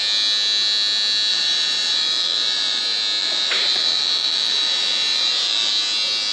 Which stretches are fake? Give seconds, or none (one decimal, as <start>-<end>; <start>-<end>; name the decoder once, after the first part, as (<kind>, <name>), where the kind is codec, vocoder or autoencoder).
1.3-2.8 (vocoder, BigVGAN v2); 3.2-5.7